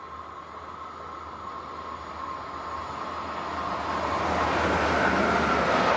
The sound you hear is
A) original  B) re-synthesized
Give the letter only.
A